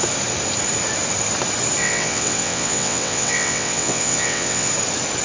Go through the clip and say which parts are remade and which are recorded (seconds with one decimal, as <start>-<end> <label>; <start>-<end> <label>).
0.0-1.8 recorded; 1.8-4.7 remade; 4.7-5.2 recorded